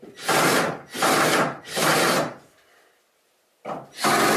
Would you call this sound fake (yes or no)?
no